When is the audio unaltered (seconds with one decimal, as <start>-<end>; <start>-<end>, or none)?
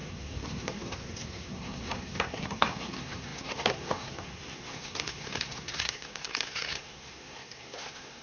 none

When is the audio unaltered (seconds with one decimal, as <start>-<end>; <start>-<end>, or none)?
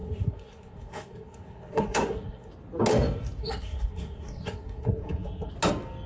2.5-3.4; 5.5-6.1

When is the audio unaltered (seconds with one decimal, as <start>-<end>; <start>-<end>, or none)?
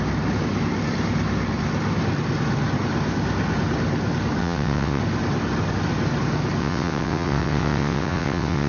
0.0-4.4; 5.0-6.6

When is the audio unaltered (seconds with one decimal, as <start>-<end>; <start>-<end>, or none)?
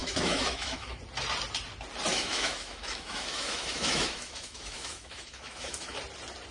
1.0-2.1; 6.0-6.5